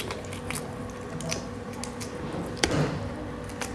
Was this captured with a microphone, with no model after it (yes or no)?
yes